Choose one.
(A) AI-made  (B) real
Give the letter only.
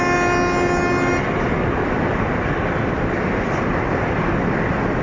B